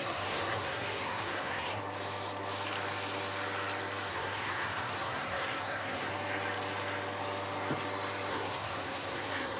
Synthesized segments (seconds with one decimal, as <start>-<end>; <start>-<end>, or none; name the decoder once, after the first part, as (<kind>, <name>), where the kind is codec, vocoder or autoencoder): 0.0-1.8 (codec, SNAC); 4.1-6.1; 8.3-9.6